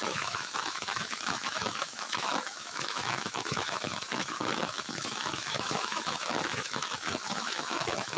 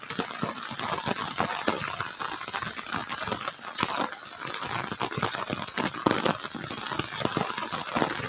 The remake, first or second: first